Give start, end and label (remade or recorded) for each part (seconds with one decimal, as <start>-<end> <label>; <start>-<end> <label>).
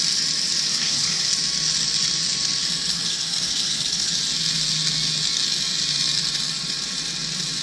0.0-0.7 recorded; 0.7-1.3 remade; 1.3-2.9 recorded; 2.9-4.1 remade; 4.1-7.6 recorded